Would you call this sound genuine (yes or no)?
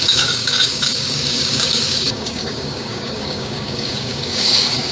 no